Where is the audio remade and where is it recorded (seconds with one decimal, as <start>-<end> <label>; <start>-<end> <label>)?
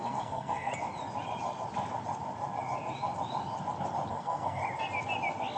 0.0-0.7 remade; 0.7-4.1 recorded; 4.1-4.6 remade; 4.6-5.6 recorded